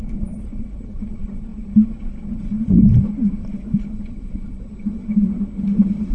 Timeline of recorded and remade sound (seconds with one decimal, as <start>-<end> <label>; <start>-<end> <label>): 0.0-1.5 remade; 1.5-2.3 recorded; 2.3-4.9 remade; 4.9-6.1 recorded